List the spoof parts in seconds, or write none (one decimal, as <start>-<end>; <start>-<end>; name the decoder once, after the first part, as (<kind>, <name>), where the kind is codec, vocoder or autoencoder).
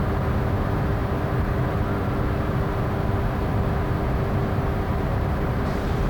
0.0-1.0 (vocoder, BigVGAN v2); 4.7-6.1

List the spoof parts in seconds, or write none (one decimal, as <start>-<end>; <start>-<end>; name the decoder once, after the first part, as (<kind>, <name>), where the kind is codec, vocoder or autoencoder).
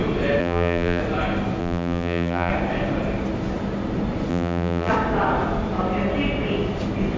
0.4-1.0 (vocoder, BigVGAN v2); 1.6-2.5; 4.3-4.9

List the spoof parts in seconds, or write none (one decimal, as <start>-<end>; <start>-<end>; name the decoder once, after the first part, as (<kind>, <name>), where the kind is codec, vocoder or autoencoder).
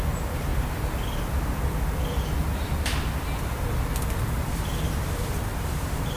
0.0-0.5 (vocoder, BigVGAN v2); 4.2-6.2